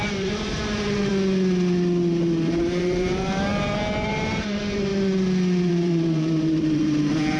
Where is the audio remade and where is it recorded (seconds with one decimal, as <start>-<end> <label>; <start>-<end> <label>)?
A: 0.0-1.1 remade; 1.1-2.5 recorded; 2.5-4.9 remade; 4.9-5.7 recorded; 5.7-7.4 remade